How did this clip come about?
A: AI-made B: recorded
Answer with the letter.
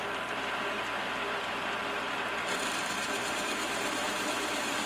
A